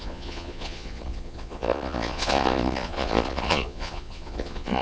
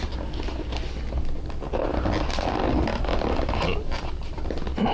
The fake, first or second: first